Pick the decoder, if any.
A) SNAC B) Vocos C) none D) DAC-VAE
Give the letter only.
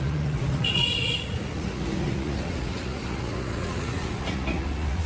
B